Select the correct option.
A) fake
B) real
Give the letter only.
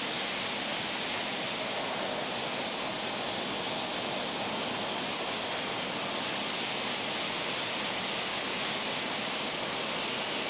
B